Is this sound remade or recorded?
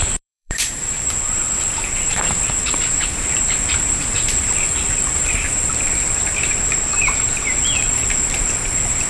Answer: remade